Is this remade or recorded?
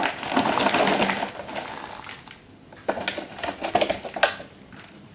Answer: recorded